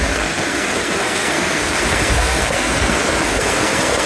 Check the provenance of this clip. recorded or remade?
remade